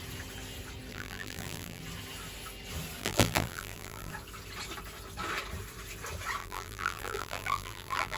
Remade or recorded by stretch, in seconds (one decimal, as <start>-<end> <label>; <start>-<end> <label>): 0.0-0.9 recorded; 0.9-1.8 remade; 1.8-3.0 recorded; 3.0-4.1 remade; 4.1-6.4 recorded; 6.4-8.2 remade